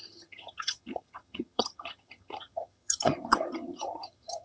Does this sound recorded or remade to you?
remade